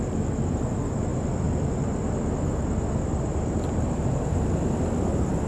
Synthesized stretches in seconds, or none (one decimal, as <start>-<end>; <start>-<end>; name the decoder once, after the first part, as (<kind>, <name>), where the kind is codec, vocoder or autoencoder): none